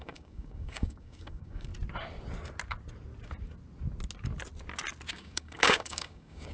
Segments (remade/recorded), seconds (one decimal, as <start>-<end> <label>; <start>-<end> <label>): 0.0-1.7 remade; 1.7-5.1 recorded; 5.1-6.5 remade